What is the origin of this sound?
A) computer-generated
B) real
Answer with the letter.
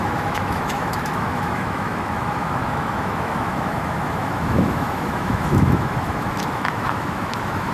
A